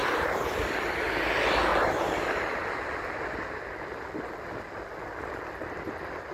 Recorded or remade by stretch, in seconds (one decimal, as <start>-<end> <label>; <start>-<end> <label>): 0.0-0.9 remade; 0.9-1.7 recorded; 1.7-2.9 remade; 2.9-6.3 recorded